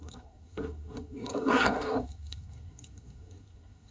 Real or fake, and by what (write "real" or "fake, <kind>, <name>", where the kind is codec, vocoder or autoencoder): fake, codec, SNAC